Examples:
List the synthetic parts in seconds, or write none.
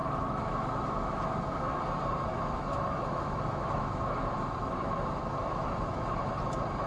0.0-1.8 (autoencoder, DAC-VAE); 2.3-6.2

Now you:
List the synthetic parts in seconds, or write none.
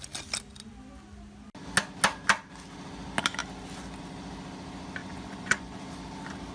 5.0-5.9 (vocoder, Vocos)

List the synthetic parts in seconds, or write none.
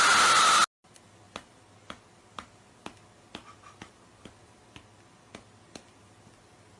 none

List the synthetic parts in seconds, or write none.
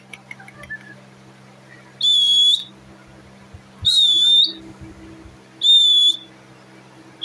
none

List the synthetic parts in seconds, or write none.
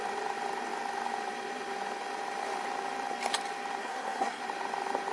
3.8-4.4 (codec, SNAC)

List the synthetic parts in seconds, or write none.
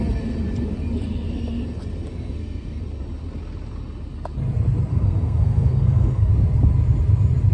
2.1-2.8 (codec, SNAC); 4.9-6.3